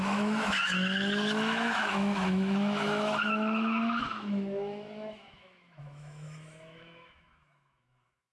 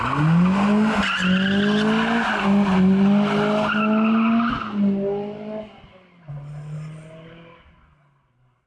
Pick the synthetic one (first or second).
first